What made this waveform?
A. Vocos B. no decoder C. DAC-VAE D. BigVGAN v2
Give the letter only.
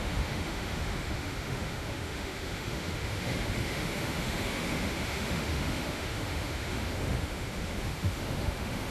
C